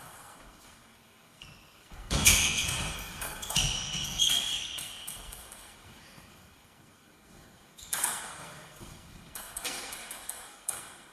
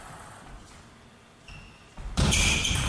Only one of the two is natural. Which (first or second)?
second